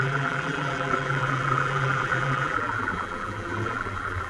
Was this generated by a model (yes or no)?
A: yes